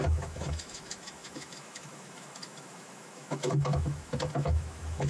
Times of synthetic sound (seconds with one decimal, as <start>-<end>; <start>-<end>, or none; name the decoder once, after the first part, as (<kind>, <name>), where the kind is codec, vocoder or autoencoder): 0.0-5.1 (autoencoder, DAC-VAE)